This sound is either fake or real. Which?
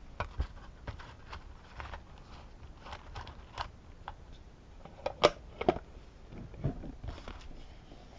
real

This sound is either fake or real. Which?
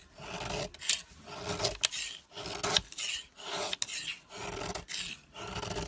real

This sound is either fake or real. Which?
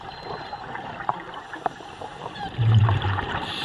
fake